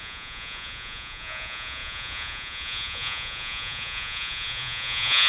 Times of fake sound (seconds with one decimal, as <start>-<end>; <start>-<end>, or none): 0.0-5.3